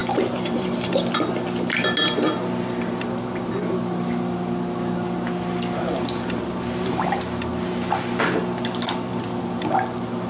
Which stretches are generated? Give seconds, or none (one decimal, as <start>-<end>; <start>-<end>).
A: 0.0-0.9